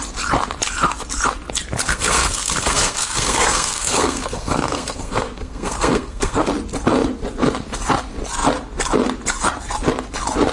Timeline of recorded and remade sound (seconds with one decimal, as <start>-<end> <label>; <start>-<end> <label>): 0.0-1.8 recorded; 1.8-6.5 remade; 6.5-10.5 recorded

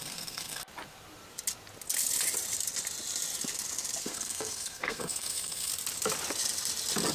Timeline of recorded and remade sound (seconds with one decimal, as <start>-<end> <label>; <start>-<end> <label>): 0.0-0.6 remade; 0.6-4.0 recorded; 4.0-5.7 remade; 5.7-7.1 recorded

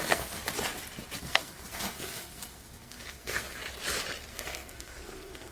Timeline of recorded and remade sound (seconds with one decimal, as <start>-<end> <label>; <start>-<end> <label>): 0.0-0.4 remade; 0.4-1.2 recorded; 1.2-3.6 remade; 3.6-4.3 recorded; 4.3-5.5 remade

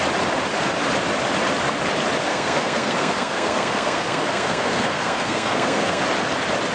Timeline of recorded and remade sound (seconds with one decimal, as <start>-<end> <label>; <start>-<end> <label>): 0.0-2.3 recorded; 2.3-6.0 remade; 6.0-6.7 recorded

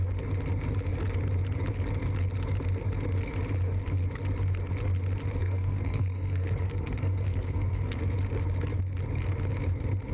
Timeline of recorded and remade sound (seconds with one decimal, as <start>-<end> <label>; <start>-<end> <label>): 0.0-5.4 recorded; 5.4-8.0 remade; 8.0-10.1 recorded